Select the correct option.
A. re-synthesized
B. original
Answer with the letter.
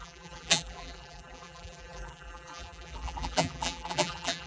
A